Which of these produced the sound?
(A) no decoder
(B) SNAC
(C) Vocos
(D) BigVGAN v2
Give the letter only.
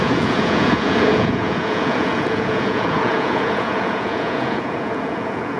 C